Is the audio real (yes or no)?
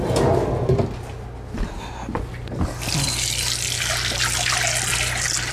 yes